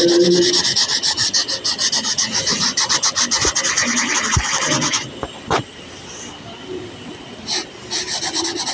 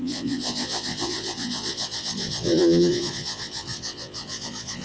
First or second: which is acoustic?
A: first